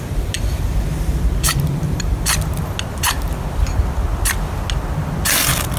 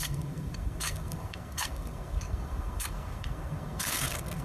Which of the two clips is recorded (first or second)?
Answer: first